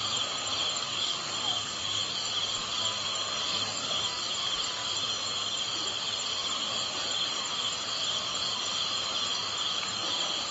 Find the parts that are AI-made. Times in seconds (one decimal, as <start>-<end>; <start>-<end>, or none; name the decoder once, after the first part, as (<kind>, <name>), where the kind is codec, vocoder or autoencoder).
0.8-2.1 (codec, DAC); 3.4-4.0